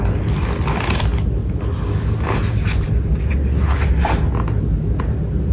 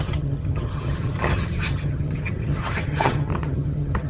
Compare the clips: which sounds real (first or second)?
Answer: first